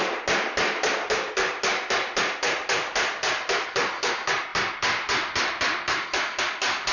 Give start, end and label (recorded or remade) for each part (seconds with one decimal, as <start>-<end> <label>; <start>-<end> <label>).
0.0-6.9 recorded